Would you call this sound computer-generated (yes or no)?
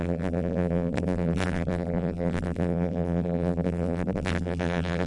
yes